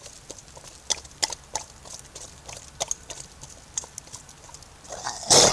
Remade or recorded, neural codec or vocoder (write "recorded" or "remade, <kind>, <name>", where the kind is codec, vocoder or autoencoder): recorded